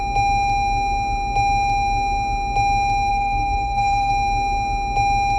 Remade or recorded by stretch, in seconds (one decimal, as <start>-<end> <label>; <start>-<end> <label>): 0.0-3.1 recorded; 3.1-4.1 remade; 4.1-5.4 recorded